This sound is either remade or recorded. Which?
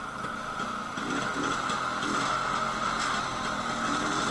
recorded